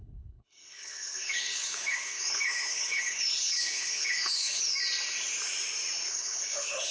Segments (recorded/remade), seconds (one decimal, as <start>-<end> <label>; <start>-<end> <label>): 0.0-4.7 remade; 4.7-6.1 recorded; 6.1-6.9 remade